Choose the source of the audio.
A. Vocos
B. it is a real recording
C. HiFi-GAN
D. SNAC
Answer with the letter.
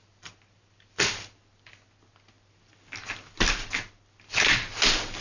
B